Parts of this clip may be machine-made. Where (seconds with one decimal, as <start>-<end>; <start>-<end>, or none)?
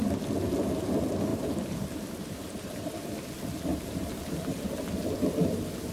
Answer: 1.3-3.3; 3.7-4.7